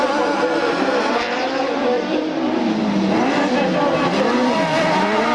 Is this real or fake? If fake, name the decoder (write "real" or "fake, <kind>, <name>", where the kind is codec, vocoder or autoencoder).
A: fake, vocoder, BigVGAN v2